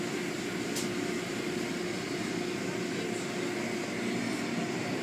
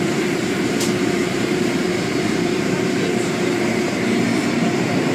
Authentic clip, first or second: first